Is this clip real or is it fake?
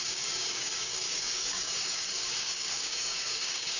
fake